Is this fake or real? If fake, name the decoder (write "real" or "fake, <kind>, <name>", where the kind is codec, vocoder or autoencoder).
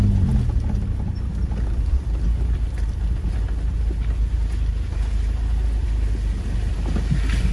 real